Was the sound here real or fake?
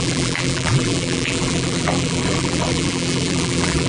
fake